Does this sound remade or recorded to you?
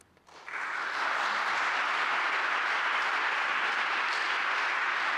recorded